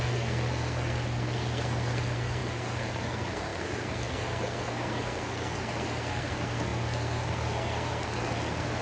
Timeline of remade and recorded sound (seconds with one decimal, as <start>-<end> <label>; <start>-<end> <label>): 0.0-8.8 remade